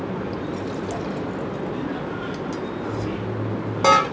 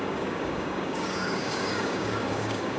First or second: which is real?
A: first